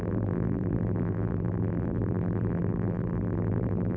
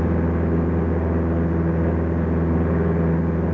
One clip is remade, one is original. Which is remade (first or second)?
first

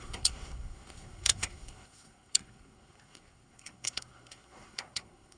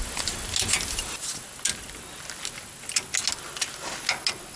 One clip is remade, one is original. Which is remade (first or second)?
first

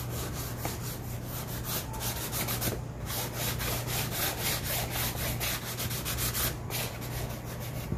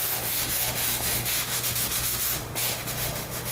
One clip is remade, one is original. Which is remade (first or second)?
second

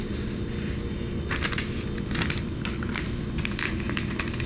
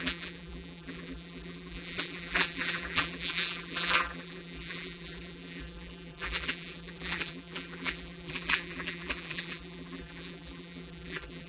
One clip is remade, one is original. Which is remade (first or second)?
second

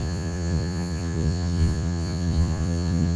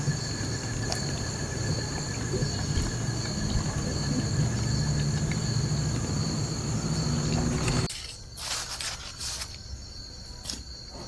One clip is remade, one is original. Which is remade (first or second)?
first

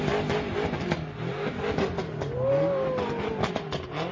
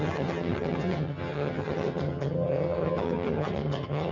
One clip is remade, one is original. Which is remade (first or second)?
second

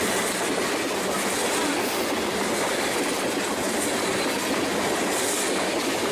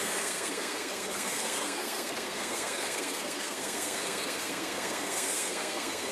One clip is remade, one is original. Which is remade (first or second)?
second